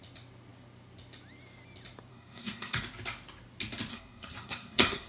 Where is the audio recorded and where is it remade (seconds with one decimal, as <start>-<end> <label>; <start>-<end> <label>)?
0.0-2.1 recorded; 2.1-2.8 remade; 2.8-3.9 recorded; 3.9-5.1 remade